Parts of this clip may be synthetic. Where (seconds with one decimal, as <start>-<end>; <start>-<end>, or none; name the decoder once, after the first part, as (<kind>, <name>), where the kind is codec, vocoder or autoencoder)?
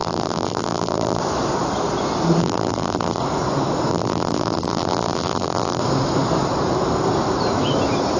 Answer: 0.0-1.2 (vocoder, BigVGAN v2); 2.4-3.2; 3.9-5.8